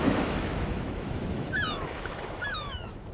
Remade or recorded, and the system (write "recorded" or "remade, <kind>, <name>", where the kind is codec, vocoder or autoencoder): remade, autoencoder, DAC-VAE